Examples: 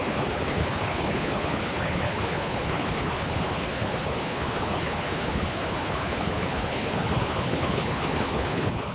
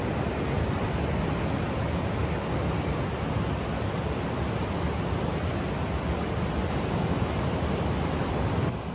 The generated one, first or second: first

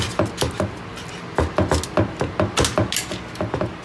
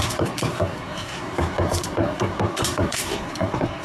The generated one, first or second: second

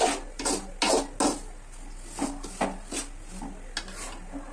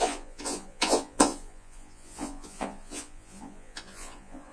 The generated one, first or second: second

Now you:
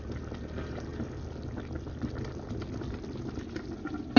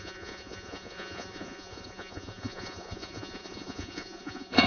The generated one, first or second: second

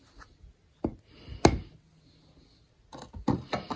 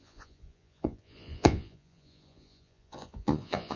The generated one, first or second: second